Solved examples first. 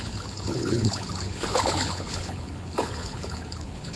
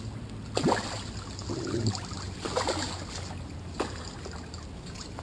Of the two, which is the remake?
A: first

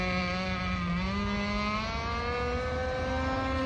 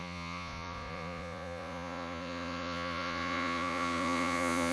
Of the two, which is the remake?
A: second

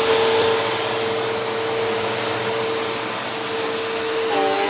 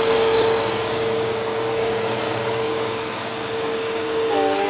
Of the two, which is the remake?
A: second